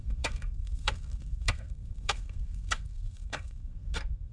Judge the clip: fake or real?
fake